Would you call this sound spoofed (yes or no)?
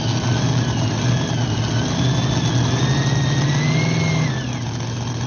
no